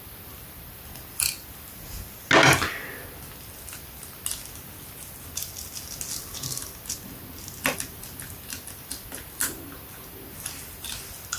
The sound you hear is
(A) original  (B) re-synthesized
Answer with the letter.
A